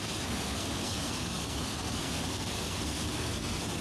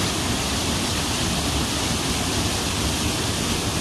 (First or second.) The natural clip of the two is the second